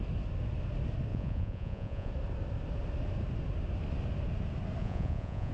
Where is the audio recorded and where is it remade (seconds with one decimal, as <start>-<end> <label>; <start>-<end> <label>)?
0.0-1.1 recorded; 1.1-2.1 remade; 2.1-4.8 recorded; 4.8-5.5 remade